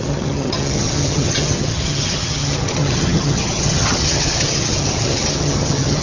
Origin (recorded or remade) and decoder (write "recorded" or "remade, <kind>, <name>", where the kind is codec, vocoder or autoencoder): remade, vocoder, HiFi-GAN